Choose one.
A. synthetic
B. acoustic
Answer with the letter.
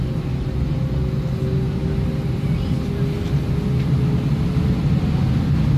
B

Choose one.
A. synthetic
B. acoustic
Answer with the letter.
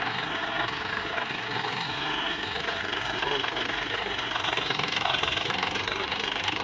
A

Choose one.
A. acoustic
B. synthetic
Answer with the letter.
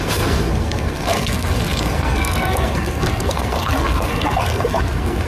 B